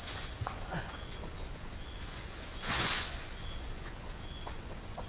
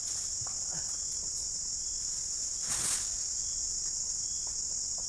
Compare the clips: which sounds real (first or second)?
second